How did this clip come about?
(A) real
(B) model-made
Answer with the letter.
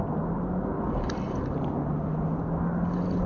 A